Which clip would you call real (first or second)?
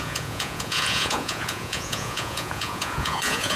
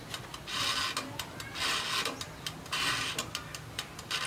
second